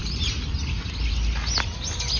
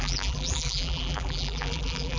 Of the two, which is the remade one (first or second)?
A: second